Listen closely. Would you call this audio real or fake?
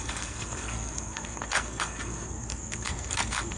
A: fake